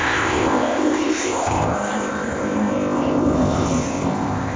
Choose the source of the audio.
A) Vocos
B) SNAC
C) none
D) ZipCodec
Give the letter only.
D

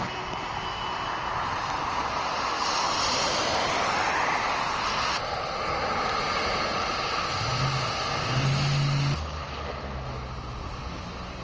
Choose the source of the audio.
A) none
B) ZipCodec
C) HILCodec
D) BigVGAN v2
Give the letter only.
A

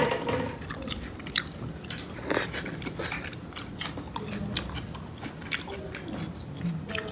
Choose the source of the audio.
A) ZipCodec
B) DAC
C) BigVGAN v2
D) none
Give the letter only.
D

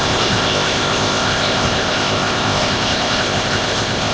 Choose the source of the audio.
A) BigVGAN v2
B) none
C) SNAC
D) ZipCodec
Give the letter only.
D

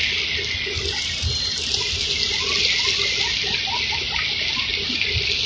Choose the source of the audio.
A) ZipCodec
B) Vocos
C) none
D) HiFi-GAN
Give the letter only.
C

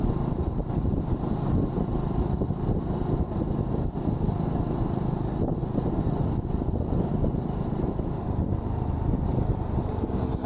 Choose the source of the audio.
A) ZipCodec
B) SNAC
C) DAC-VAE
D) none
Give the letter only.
D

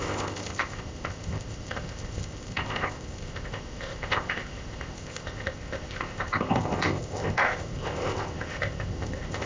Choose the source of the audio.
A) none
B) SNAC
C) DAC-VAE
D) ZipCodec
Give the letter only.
D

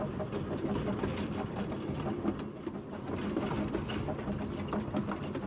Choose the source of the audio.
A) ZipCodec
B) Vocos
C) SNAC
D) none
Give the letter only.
D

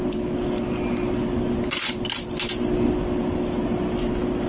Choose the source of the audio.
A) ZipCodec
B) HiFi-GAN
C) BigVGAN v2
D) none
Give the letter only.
D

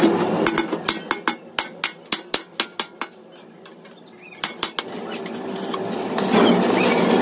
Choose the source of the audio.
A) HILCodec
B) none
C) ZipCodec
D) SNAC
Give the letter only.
B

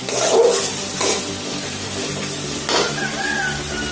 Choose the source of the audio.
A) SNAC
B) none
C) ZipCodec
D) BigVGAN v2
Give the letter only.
B